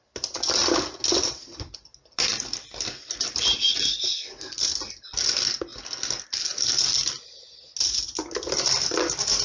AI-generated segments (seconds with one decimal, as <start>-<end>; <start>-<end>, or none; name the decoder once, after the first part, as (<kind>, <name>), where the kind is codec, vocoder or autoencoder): none